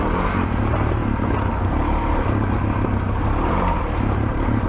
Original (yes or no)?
no